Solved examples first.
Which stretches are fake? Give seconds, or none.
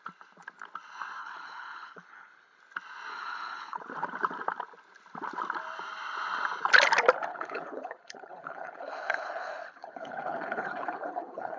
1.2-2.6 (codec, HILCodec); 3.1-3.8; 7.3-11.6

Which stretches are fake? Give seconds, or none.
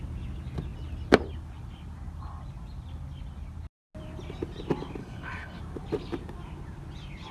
5.0-5.6 (codec, HILCodec)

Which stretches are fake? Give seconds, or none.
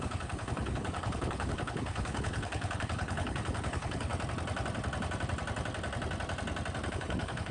0.0-4.1 (codec, HILCodec); 6.9-7.5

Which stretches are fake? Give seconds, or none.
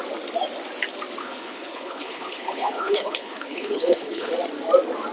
1.2-4.3 (codec, HILCodec)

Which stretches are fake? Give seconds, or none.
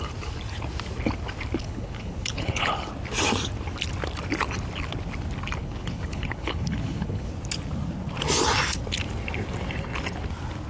1.6-2.9 (codec, HILCodec); 5.6-7.3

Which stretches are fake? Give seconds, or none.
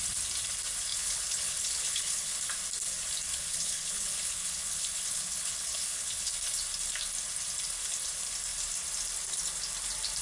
0.9-2.4 (codec, HILCodec); 3.3-6.3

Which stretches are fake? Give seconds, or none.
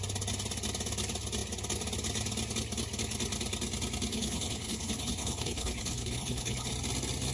4.1-6.7 (codec, HILCodec)